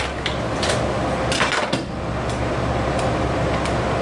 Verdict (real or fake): real